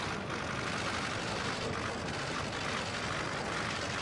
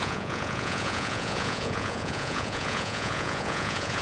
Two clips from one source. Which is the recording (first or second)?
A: first